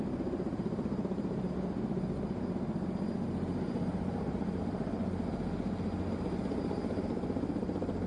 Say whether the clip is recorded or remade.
recorded